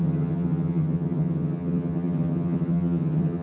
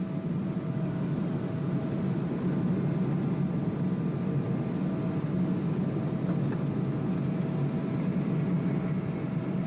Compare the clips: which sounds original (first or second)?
second